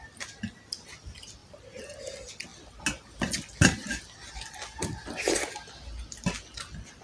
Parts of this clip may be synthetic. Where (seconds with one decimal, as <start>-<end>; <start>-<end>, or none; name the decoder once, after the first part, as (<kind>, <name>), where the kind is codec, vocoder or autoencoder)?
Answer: none